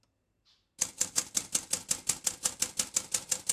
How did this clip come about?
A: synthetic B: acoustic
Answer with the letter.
B